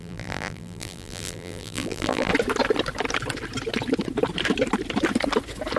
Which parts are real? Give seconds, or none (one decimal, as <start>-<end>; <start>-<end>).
2.3-5.8